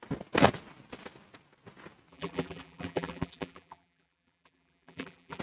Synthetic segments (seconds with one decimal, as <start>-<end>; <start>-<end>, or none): 2.1-5.4

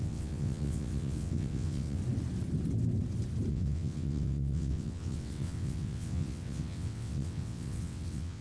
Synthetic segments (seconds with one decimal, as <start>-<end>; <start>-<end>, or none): 0.0-2.0; 3.5-8.4